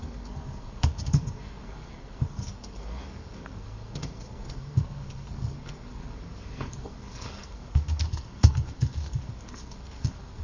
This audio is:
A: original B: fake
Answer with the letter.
B